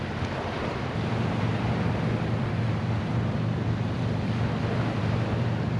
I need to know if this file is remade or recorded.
remade